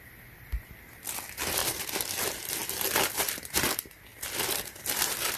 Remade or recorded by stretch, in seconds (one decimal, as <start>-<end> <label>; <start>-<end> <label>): 0.0-1.6 recorded; 1.6-2.2 remade; 2.2-2.6 recorded; 2.6-3.2 remade; 3.2-4.1 recorded; 4.1-5.4 remade